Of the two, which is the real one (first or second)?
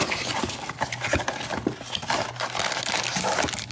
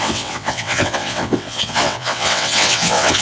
first